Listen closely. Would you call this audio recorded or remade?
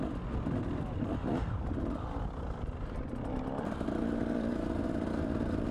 recorded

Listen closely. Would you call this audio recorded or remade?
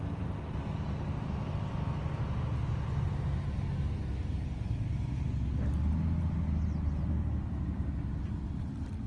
recorded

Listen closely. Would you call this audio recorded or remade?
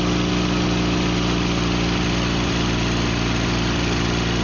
recorded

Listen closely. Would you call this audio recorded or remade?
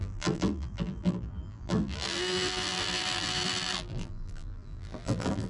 remade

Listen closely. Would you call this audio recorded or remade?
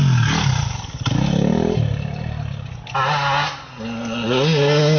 recorded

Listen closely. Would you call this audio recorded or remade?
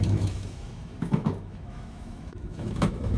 remade